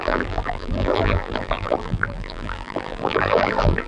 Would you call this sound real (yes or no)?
no